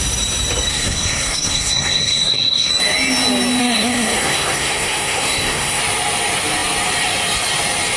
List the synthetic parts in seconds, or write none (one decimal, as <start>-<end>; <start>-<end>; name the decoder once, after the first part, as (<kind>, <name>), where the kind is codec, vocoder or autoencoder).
0.7-2.7 (codec, SNAC); 3.6-5.8